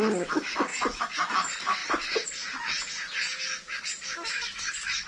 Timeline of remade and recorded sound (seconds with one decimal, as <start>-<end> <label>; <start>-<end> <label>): 0.0-5.1 remade